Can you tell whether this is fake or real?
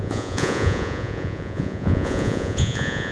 fake